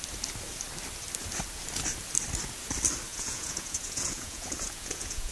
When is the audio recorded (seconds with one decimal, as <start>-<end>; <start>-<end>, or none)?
0.0-3.1